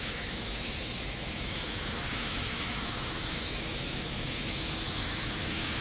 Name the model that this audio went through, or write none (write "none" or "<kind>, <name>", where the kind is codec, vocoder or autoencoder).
autoencoder, DAC-VAE